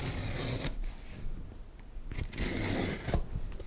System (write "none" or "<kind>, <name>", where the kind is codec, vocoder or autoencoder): none